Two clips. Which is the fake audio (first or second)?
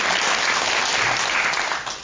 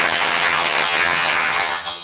second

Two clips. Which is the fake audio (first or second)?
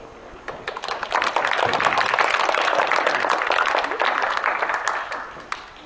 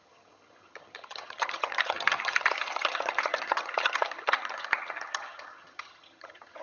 second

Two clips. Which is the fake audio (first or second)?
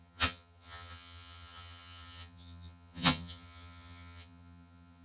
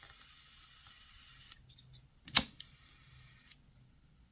first